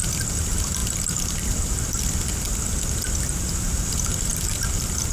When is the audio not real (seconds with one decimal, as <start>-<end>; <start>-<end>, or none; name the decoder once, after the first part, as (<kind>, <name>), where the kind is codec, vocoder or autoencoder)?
none